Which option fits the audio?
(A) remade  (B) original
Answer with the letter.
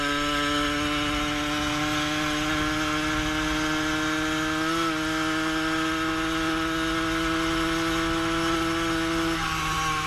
B